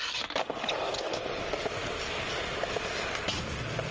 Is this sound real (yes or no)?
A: yes